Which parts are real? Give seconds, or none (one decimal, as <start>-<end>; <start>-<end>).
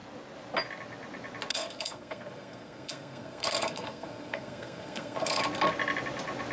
0.0-1.5; 5.4-6.5